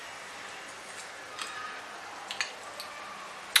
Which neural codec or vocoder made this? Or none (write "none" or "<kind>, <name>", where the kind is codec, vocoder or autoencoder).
none